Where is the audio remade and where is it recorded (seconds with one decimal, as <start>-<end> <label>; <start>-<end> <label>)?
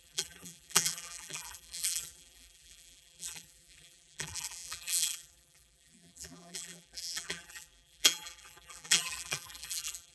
0.0-10.1 remade